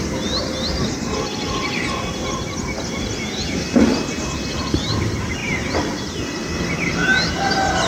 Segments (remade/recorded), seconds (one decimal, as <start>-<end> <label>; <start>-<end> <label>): 0.0-0.7 recorded; 0.7-2.0 remade; 2.0-5.4 recorded; 5.4-6.0 remade; 6.0-7.9 recorded